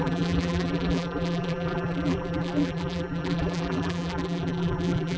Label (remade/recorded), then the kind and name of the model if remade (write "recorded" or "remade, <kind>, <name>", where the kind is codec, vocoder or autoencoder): remade, vocoder, BigVGAN v2